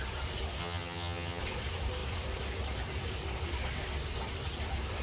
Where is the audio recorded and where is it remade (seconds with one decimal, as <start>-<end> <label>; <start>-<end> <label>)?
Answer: 0.0-0.6 recorded; 0.6-1.4 remade; 1.4-5.0 recorded

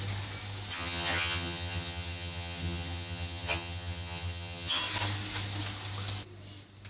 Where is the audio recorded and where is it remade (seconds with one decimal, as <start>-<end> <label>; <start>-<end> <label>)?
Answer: 0.0-0.7 recorded; 0.7-4.8 remade; 4.8-6.9 recorded